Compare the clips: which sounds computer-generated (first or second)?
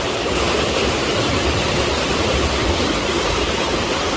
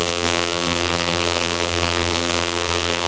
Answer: second